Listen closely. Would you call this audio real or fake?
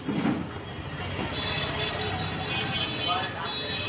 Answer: real